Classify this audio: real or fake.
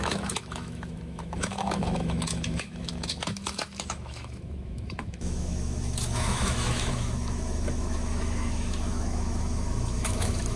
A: fake